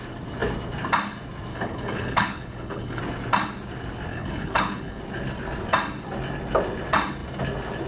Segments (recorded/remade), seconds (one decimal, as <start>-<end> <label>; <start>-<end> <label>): 0.0-1.5 recorded; 1.5-3.0 remade; 3.0-4.1 recorded; 4.1-5.0 remade; 5.0-7.9 recorded